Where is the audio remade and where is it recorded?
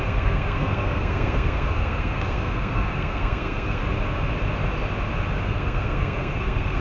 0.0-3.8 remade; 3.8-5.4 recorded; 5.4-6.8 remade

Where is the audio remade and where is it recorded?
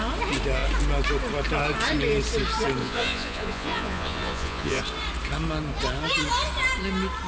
0.0-2.8 recorded; 2.8-4.8 remade; 4.8-7.3 recorded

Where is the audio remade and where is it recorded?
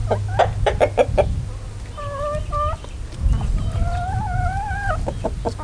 0.0-5.6 recorded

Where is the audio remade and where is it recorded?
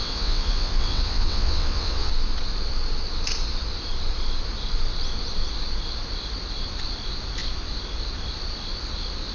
0.0-2.1 remade; 2.1-9.3 recorded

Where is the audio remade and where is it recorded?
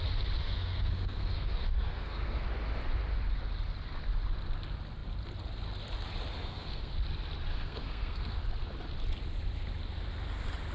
0.0-0.4 recorded; 0.4-2.4 remade; 2.4-6.3 recorded; 6.3-6.9 remade; 6.9-7.5 recorded; 7.5-8.4 remade; 8.4-10.7 recorded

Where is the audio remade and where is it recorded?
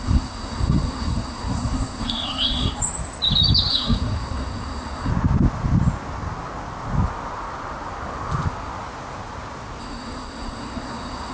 0.0-2.8 remade; 2.8-3.7 recorded; 3.7-5.1 remade; 5.1-9.8 recorded; 9.8-11.3 remade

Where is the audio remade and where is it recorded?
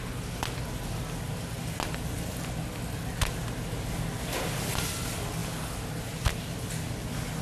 0.0-7.4 recorded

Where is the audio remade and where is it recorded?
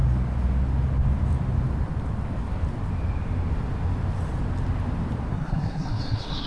0.0-5.3 recorded; 5.3-6.5 remade